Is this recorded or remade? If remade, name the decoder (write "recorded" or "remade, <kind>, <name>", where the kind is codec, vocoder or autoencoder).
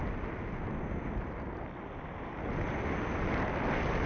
recorded